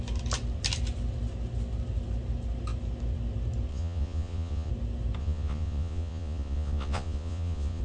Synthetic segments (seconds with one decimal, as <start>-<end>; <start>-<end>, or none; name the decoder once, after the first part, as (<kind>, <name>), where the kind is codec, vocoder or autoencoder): 3.7-4.7 (vocoder, Vocos); 5.2-7.8